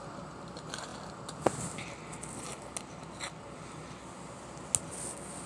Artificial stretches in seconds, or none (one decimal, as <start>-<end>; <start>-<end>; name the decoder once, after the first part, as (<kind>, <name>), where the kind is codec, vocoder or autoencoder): none